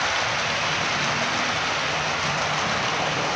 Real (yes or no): yes